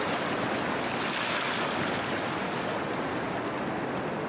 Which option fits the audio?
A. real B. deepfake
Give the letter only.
A